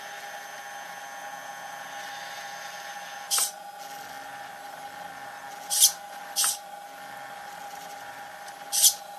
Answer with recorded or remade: recorded